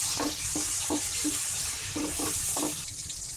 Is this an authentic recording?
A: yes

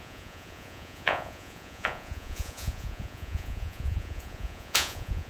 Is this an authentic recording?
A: no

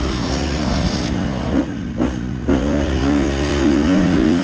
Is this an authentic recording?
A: no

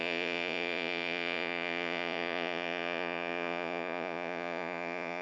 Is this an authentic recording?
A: no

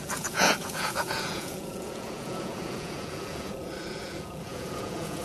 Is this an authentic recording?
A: no